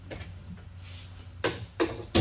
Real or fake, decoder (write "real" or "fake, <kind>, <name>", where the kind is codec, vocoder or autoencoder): real